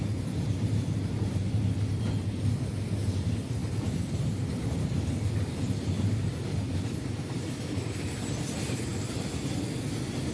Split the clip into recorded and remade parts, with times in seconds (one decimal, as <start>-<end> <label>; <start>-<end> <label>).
0.0-10.3 recorded

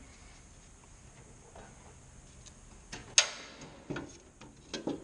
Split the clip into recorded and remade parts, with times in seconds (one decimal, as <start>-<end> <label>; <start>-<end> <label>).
0.0-5.0 recorded

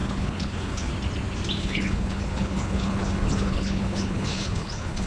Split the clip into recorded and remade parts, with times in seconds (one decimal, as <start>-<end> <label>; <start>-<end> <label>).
0.0-0.9 remade; 0.9-1.6 recorded; 1.6-5.1 remade

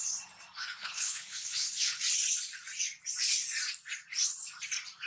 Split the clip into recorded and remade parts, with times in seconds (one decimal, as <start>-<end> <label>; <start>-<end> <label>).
0.0-0.6 recorded; 0.6-2.0 remade; 2.0-5.1 recorded

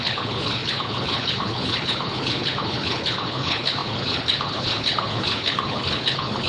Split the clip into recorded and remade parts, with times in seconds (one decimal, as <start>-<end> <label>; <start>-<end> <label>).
0.0-6.5 remade

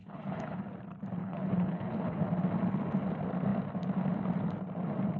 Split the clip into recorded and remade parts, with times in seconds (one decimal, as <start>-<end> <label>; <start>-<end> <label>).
0.0-0.6 remade; 0.6-1.2 recorded; 1.2-2.2 remade; 2.2-5.2 recorded

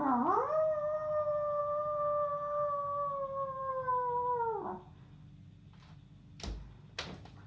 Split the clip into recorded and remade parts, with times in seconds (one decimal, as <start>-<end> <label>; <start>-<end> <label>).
0.0-7.5 recorded